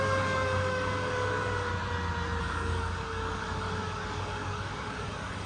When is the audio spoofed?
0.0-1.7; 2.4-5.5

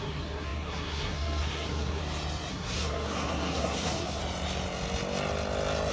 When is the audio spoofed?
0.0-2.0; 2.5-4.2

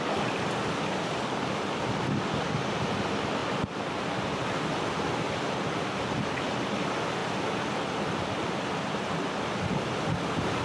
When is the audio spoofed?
none

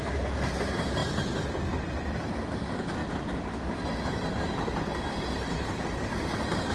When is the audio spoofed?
none

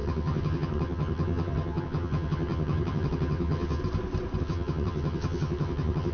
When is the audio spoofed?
0.0-3.8; 4.4-6.1